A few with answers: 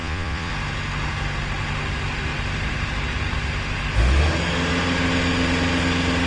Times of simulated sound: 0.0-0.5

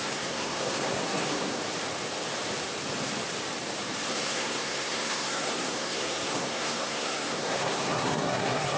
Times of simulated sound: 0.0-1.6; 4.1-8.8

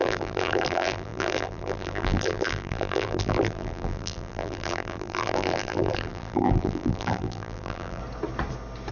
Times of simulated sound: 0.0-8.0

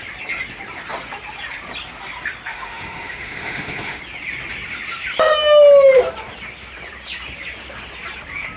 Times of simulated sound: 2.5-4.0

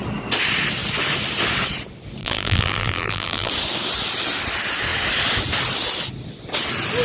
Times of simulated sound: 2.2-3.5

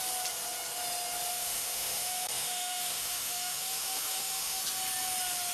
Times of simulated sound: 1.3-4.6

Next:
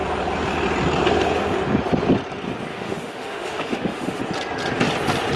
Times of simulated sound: 2.7-4.2